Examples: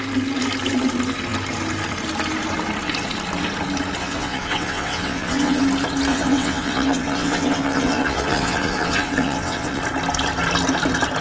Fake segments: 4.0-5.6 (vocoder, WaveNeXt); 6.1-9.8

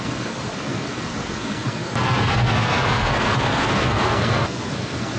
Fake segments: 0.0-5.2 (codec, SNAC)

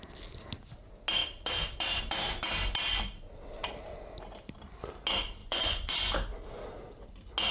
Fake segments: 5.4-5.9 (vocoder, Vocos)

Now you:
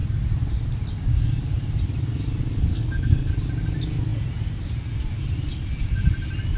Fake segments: 2.7-3.3 (codec, SNAC)

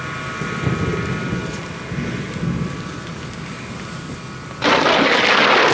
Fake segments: none